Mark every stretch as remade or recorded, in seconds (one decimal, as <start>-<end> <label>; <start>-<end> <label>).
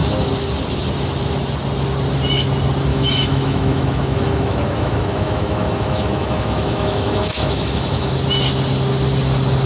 0.0-2.9 recorded; 2.9-8.1 remade; 8.1-9.7 recorded